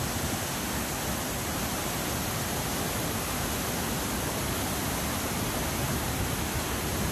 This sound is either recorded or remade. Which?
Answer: recorded